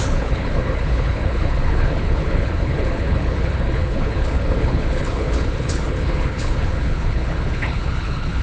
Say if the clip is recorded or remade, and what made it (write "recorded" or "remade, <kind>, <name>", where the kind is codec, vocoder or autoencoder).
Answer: remade, codec, HILCodec